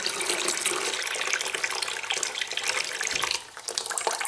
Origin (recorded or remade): recorded